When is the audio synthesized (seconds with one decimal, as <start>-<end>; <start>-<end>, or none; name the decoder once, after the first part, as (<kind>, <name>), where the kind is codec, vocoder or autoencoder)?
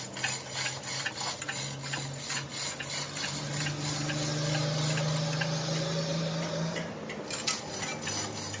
none